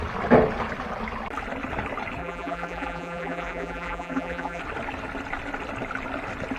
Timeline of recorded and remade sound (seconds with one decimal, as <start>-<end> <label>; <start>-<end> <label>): 0.0-2.2 recorded; 2.2-4.6 remade; 4.6-6.6 recorded